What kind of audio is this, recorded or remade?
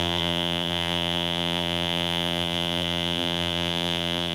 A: remade